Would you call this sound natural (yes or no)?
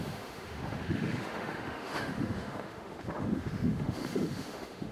no